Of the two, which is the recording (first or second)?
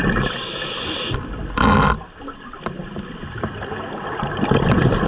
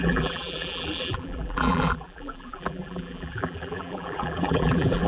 first